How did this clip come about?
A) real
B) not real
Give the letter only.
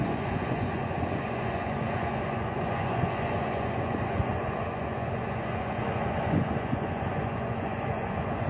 B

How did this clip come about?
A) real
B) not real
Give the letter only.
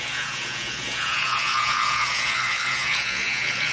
B